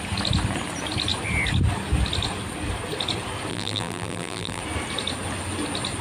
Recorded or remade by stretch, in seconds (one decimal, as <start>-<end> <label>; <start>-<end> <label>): 0.0-3.5 recorded; 3.5-4.6 remade; 4.6-6.0 recorded